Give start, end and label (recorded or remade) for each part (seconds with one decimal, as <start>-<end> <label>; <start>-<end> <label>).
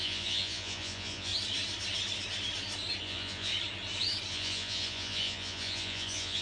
0.0-1.3 remade; 1.3-3.0 recorded; 3.0-3.5 remade; 3.5-4.3 recorded; 4.3-6.4 remade